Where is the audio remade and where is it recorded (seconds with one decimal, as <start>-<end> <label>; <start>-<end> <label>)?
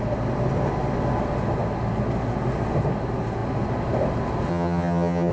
0.0-4.5 recorded; 4.5-5.3 remade